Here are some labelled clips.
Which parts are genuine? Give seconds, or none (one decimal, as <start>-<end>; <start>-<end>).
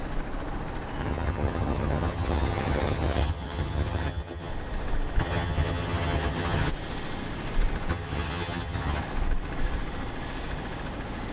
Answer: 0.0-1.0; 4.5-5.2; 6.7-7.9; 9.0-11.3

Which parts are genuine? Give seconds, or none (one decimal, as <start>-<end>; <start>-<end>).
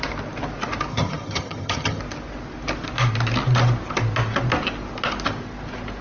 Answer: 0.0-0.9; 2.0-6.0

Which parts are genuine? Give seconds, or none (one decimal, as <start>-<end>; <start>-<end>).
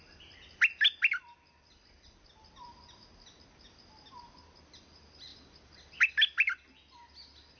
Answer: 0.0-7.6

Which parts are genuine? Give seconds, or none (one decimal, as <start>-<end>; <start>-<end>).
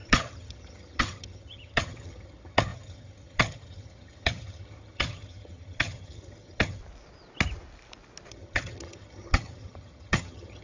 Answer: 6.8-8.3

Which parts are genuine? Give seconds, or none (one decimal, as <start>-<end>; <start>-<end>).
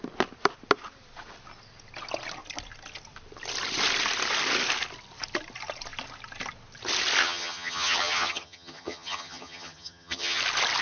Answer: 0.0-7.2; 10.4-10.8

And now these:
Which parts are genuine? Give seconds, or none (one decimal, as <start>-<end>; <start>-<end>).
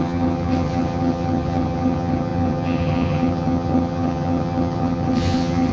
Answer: none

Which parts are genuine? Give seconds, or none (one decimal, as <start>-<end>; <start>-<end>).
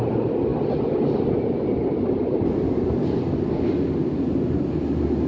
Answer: 0.0-5.3